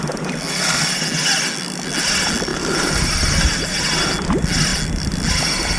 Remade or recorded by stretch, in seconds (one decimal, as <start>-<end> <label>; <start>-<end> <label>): 0.0-2.5 recorded; 2.5-3.8 remade; 3.8-5.8 recorded